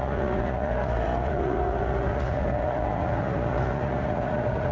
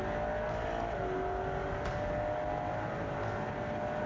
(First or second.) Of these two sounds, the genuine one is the second